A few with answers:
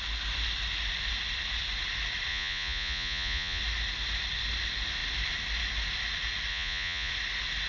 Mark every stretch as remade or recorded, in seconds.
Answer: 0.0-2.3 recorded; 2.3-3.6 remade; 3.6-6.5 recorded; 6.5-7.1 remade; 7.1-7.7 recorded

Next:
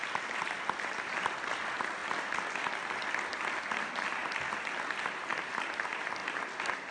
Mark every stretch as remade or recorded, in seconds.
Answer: 0.0-2.0 recorded; 2.0-2.7 remade; 2.7-6.9 recorded

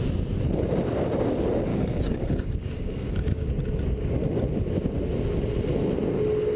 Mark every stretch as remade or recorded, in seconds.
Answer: 0.0-1.7 recorded; 1.7-3.5 remade; 3.5-6.6 recorded